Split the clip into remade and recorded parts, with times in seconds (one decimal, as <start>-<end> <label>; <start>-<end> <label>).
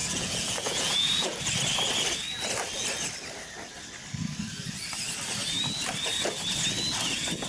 0.0-1.4 remade; 1.4-7.5 recorded